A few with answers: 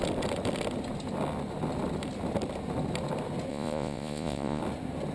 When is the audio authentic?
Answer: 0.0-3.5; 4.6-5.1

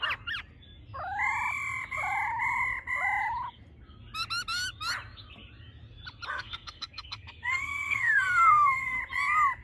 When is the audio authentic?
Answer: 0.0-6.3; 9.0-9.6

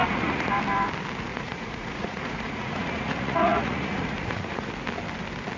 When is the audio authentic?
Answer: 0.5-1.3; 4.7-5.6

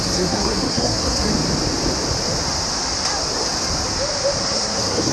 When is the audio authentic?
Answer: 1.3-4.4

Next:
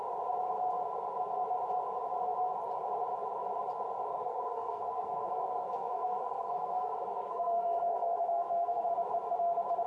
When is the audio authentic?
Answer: 0.0-4.1; 8.9-9.9